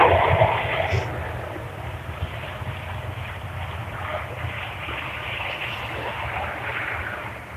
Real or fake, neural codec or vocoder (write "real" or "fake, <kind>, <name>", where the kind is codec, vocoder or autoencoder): real